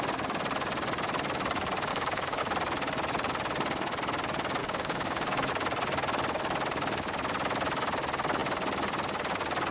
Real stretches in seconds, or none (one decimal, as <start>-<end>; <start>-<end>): 0.0-1.9; 2.4-4.6; 5.5-9.7